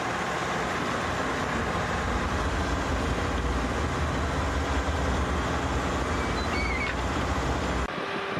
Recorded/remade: recorded